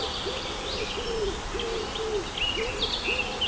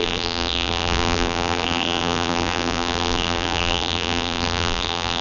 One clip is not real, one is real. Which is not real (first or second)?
second